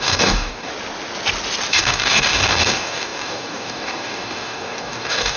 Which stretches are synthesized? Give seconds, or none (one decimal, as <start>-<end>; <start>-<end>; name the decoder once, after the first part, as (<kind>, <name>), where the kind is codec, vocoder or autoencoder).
0.0-0.7 (codec, DAC); 1.7-5.4